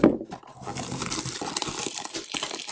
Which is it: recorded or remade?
recorded